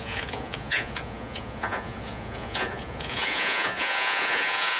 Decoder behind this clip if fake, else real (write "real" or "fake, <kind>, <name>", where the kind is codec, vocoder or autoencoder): fake, vocoder, Vocos